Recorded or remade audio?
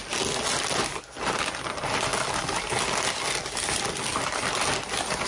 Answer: recorded